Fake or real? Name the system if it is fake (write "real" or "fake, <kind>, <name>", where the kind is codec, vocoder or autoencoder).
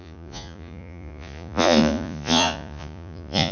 fake, vocoder, Vocos